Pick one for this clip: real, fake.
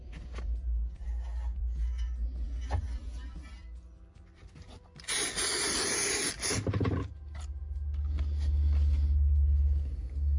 real